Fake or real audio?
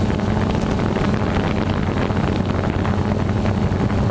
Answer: real